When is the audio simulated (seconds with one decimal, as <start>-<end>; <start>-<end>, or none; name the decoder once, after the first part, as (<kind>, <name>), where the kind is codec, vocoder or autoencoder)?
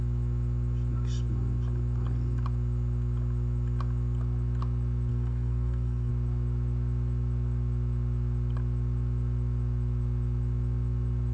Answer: 5.1-6.1 (codec, SNAC)